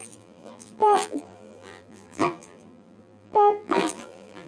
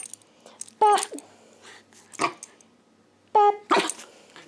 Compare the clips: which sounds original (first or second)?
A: second